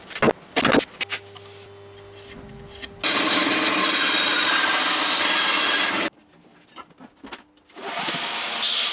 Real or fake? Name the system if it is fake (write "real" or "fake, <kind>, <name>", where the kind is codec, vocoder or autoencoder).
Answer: real